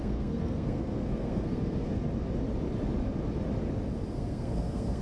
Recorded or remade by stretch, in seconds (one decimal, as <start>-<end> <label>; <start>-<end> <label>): 0.0-2.0 remade; 2.0-4.1 recorded; 4.1-5.0 remade